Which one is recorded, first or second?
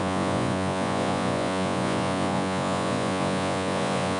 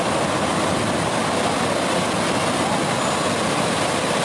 second